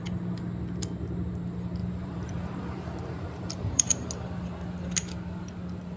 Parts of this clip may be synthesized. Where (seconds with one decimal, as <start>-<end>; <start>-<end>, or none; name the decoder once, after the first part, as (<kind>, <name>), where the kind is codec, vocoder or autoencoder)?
1.8-4.1 (vocoder, BigVGAN v2)